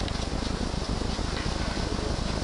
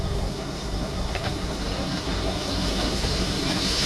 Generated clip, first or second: second